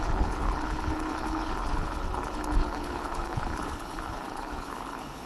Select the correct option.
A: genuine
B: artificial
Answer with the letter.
B